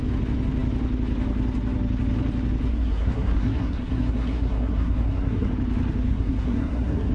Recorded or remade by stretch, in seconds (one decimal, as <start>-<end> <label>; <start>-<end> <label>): 0.0-2.7 recorded; 2.7-5.5 remade; 5.5-6.1 recorded; 6.1-7.1 remade